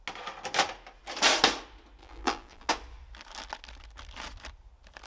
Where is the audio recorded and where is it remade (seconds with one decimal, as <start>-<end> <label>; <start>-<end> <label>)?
0.0-2.0 recorded; 2.0-2.7 remade; 2.7-5.1 recorded